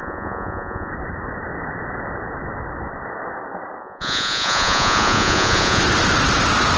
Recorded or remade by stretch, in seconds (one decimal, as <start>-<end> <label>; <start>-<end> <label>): 0.0-0.9 remade; 0.9-3.8 recorded; 3.8-5.8 remade; 5.8-6.8 recorded